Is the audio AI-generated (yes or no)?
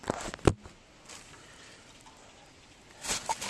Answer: no